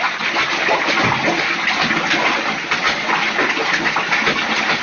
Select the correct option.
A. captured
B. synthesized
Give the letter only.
A